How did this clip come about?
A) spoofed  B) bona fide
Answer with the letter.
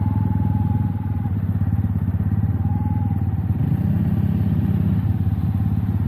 B